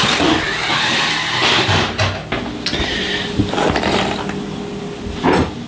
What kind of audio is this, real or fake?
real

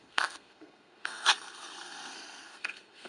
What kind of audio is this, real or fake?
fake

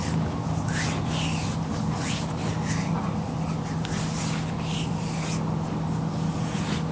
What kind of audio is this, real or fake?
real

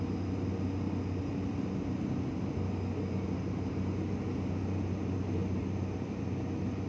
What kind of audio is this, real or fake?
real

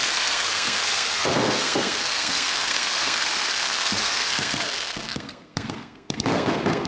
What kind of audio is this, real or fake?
fake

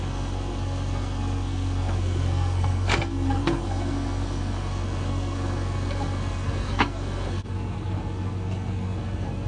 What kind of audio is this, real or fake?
fake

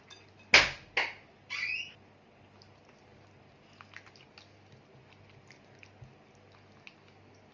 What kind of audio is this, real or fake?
real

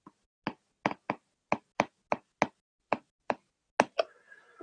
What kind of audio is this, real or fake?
real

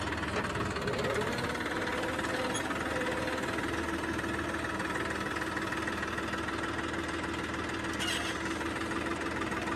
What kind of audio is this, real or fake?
real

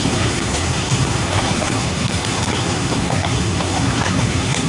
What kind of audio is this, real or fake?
fake